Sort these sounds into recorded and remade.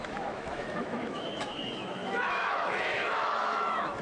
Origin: remade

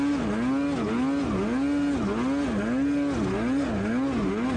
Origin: recorded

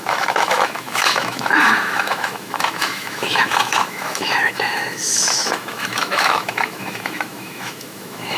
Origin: remade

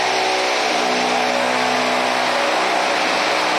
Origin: recorded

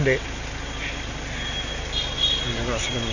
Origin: recorded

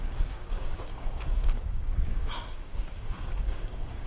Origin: remade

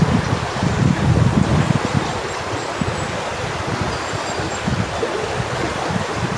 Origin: recorded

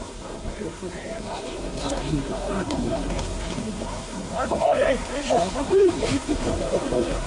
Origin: remade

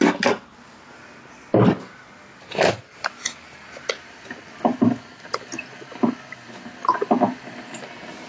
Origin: recorded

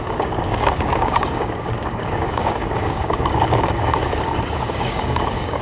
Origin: remade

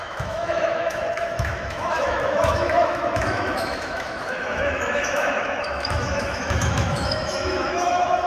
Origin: remade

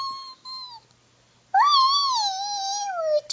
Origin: recorded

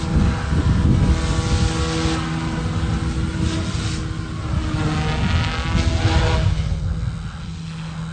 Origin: recorded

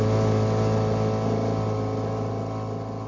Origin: recorded